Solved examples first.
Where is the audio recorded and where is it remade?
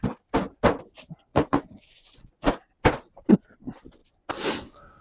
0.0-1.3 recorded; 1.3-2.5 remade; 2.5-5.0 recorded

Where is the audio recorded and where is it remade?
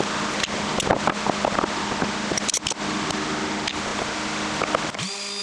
0.0-5.4 recorded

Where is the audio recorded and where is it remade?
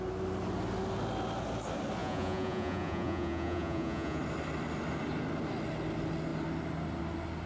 0.0-2.0 recorded; 2.0-4.2 remade; 4.2-7.5 recorded